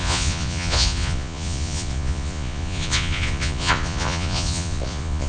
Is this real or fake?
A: fake